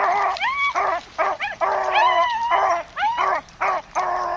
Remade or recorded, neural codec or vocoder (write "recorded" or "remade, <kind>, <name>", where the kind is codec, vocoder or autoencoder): recorded